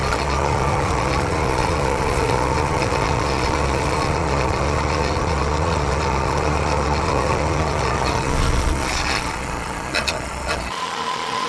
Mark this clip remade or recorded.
remade